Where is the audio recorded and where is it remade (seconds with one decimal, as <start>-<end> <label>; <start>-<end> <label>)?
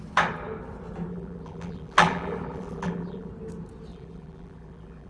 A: 0.0-1.1 recorded; 1.1-3.3 remade; 3.3-3.9 recorded; 3.9-5.1 remade